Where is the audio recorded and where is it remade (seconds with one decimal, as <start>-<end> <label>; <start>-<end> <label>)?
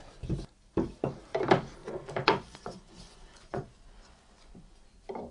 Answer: 0.0-1.8 recorded; 1.8-4.8 remade; 4.8-5.3 recorded